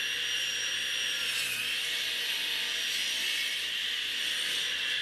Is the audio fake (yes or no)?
no